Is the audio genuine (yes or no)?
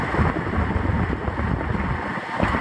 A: yes